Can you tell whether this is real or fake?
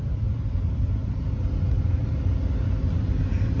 real